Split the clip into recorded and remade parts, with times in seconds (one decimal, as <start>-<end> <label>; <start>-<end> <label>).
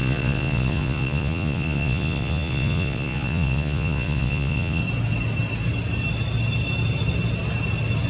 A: 0.0-4.8 remade; 4.8-8.1 recorded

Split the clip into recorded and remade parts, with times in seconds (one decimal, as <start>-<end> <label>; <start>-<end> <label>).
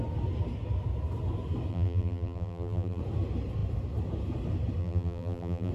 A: 0.0-1.7 recorded; 1.7-3.0 remade; 3.0-4.8 recorded; 4.8-5.7 remade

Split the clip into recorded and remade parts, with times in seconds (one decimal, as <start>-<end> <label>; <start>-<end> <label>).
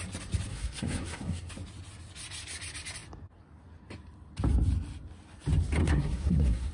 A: 0.0-0.5 recorded; 0.5-1.5 remade; 1.5-5.8 recorded; 5.8-6.7 remade